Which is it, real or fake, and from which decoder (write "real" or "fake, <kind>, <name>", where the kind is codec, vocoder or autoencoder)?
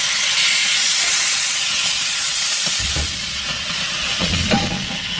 fake, vocoder, Vocos